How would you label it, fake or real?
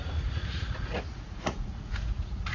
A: fake